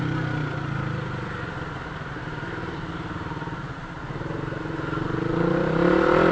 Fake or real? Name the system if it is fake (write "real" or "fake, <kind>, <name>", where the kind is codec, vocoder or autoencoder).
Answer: real